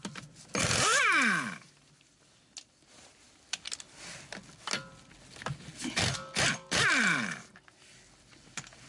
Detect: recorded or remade recorded